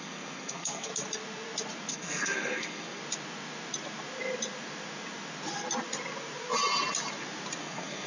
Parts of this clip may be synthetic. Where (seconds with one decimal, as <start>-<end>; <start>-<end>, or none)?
0.0-0.9; 1.9-3.0; 7.6-8.1